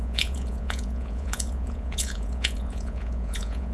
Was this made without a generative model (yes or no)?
no